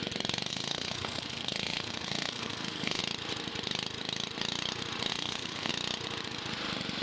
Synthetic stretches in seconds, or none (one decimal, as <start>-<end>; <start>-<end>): 0.5-3.0; 5.1-5.7